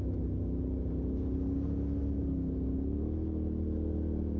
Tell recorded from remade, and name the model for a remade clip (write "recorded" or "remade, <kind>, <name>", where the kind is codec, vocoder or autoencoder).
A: recorded